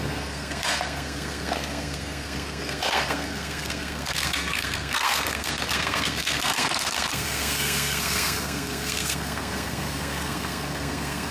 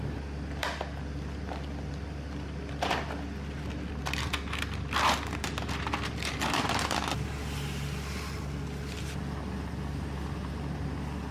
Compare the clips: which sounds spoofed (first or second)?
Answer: first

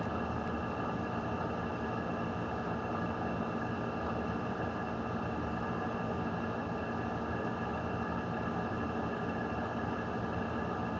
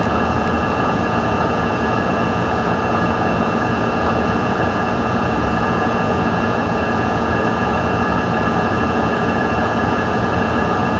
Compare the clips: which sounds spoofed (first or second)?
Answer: second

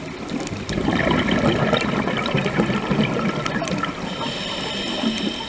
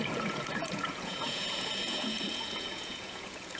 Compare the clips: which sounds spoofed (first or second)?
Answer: second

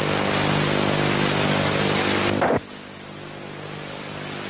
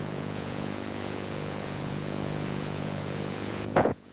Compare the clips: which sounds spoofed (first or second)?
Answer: second